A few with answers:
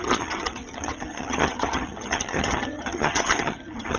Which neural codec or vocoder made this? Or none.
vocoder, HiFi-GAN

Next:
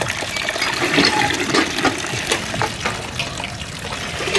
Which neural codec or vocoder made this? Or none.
none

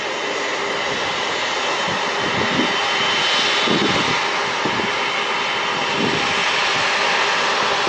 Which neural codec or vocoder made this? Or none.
none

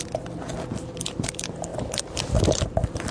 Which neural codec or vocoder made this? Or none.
none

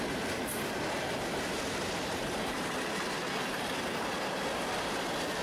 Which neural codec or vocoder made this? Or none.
none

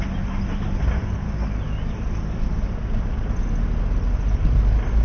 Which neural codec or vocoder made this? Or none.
none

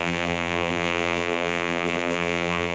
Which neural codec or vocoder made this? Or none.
vocoder, BigVGAN v2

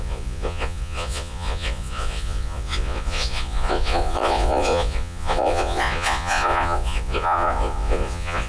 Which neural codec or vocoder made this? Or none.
vocoder, Vocos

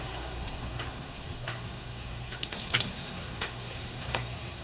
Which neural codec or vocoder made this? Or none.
codec, SNAC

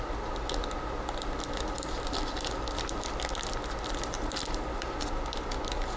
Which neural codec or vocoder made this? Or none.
none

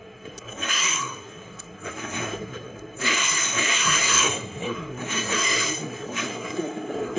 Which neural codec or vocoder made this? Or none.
codec, SNAC